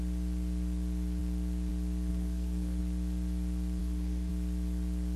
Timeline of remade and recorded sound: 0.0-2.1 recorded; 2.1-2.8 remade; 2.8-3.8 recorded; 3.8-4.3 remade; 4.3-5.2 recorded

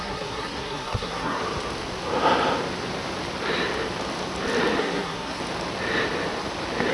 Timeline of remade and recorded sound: 0.0-1.4 remade; 1.4-4.8 recorded; 4.8-5.4 remade; 5.4-6.9 recorded

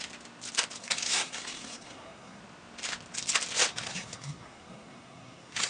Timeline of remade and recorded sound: 0.0-0.8 recorded; 0.8-2.4 remade; 2.4-3.7 recorded; 3.7-5.7 remade

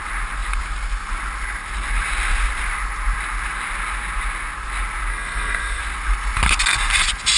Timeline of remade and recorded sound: 0.0-5.1 recorded; 5.1-5.8 remade; 5.8-7.4 recorded

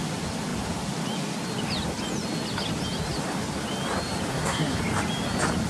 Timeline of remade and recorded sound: 0.0-4.3 recorded; 4.3-4.8 remade; 4.8-5.7 recorded

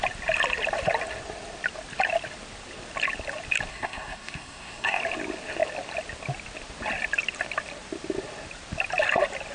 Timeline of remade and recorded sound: 0.0-3.7 recorded; 3.7-5.0 remade; 5.0-9.5 recorded

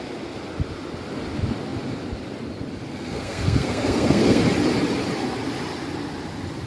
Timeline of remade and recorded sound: 0.0-2.9 recorded; 2.9-4.4 remade; 4.4-6.7 recorded